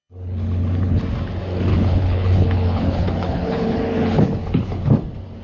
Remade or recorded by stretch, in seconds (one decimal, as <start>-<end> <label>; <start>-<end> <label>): 0.0-1.0 remade; 1.0-1.7 recorded; 1.7-4.9 remade; 4.9-5.4 recorded